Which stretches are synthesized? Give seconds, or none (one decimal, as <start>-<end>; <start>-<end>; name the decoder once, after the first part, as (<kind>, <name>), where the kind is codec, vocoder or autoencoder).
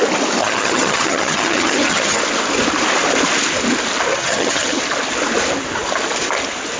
0.4-2.2 (vocoder, HiFi-GAN); 4.1-4.8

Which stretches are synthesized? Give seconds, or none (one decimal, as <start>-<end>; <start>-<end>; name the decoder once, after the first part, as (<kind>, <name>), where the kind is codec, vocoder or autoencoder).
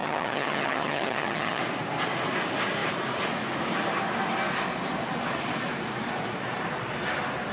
0.0-1.6 (vocoder, HiFi-GAN)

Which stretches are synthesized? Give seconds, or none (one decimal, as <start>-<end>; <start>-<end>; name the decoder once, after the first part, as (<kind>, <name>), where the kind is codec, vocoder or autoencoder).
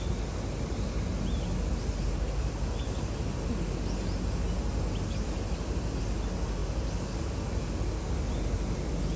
none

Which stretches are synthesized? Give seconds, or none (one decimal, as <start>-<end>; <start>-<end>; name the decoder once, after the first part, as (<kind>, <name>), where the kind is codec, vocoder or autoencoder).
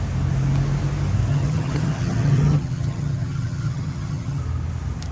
1.3-4.4 (vocoder, HiFi-GAN)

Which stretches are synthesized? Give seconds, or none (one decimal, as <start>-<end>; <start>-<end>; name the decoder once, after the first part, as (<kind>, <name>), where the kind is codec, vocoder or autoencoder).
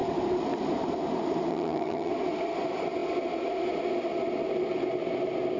1.5-2.1 (vocoder, HiFi-GAN)